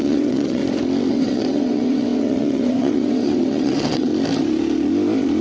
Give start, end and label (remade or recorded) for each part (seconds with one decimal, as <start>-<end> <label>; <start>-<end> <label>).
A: 0.0-0.6 remade; 0.6-1.1 recorded; 1.1-4.1 remade; 4.1-5.4 recorded

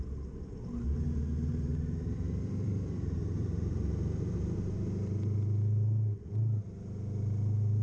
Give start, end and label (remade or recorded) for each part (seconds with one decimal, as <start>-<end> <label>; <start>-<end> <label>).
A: 0.0-1.5 recorded; 1.5-4.5 remade; 4.5-7.8 recorded

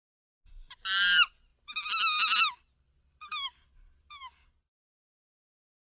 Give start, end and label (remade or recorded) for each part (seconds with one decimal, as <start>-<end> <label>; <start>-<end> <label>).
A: 0.0-5.9 recorded

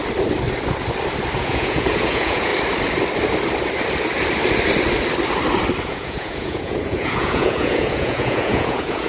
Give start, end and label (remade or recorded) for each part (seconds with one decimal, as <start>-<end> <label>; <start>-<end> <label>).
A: 0.0-1.4 recorded; 1.4-2.5 remade; 2.5-5.8 recorded; 5.8-9.1 remade

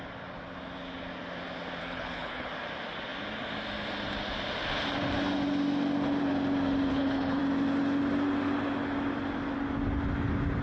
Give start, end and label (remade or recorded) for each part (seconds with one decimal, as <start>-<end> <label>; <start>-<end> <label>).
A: 0.0-1.8 recorded; 1.8-2.5 remade; 2.5-6.9 recorded; 6.9-7.4 remade; 7.4-10.6 recorded